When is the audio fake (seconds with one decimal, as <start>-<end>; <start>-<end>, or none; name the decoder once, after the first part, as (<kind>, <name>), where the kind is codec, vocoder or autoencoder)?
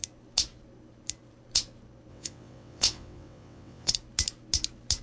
2.1-3.9 (vocoder, WaveNeXt)